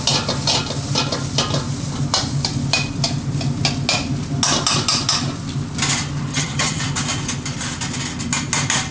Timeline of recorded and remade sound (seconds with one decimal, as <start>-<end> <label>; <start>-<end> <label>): 0.0-6.3 recorded; 6.3-6.8 remade; 6.8-8.9 recorded